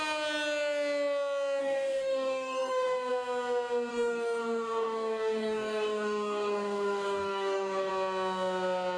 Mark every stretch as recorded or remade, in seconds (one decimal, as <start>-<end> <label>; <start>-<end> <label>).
0.0-1.6 recorded; 1.6-3.1 remade; 3.1-3.9 recorded; 3.9-7.9 remade; 7.9-9.0 recorded